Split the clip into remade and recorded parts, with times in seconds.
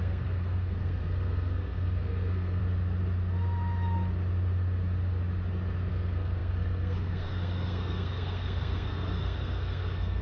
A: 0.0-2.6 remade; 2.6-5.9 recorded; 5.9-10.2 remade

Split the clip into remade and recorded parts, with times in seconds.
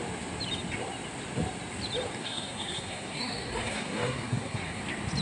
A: 0.0-2.2 recorded; 2.2-4.8 remade; 4.8-5.2 recorded